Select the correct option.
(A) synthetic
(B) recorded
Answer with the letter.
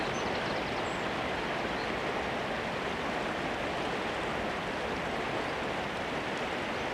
B